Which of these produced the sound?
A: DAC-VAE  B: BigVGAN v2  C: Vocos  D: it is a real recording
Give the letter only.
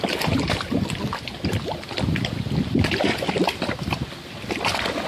D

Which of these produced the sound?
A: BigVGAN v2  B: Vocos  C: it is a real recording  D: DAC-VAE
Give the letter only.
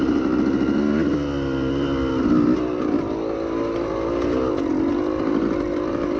C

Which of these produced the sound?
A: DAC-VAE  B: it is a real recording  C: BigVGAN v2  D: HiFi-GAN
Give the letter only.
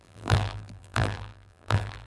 C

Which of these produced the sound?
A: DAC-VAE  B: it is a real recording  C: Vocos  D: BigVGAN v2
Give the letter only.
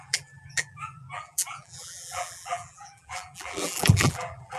D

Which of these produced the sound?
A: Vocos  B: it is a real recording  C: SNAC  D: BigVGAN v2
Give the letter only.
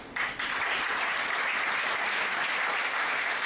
B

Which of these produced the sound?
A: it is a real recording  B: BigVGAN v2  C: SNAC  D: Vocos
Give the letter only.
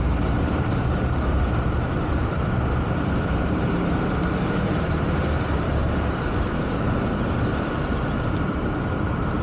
B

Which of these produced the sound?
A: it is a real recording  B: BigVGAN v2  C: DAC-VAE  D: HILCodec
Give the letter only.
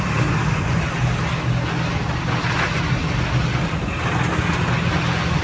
A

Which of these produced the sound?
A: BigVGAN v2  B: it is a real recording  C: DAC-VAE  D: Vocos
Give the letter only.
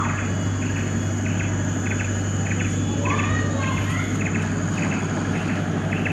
B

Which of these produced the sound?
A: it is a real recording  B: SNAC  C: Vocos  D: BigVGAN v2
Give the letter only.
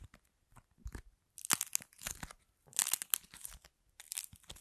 A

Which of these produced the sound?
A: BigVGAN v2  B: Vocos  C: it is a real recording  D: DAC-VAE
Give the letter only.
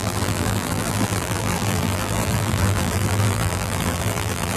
A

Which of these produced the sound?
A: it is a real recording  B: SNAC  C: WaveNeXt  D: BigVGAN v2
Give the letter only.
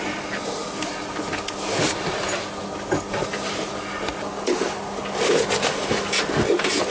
A